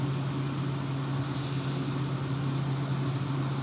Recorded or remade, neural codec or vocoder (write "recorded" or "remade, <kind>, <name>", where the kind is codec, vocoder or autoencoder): recorded